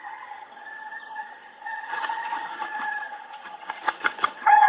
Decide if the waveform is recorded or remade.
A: remade